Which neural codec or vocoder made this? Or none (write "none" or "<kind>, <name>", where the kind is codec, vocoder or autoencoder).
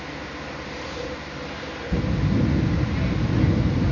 none